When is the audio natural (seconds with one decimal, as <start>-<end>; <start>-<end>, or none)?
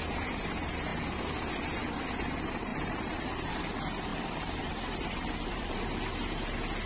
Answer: 0.0-2.7; 3.6-4.1; 5.8-6.9